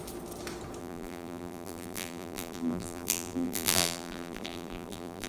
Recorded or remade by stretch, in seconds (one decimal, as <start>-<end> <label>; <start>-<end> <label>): 0.0-0.8 recorded; 0.8-5.3 remade